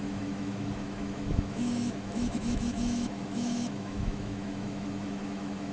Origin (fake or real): fake